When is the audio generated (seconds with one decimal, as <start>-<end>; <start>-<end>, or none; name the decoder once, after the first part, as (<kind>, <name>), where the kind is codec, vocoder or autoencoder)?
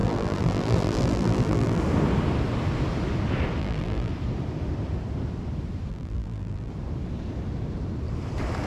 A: 0.0-1.8 (vocoder, BigVGAN v2); 3.6-4.1; 5.9-6.7